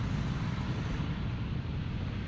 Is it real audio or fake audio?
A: real